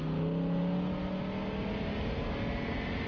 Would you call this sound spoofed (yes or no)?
no